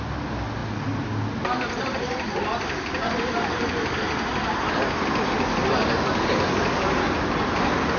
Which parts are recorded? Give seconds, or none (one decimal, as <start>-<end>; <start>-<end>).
0.0-8.0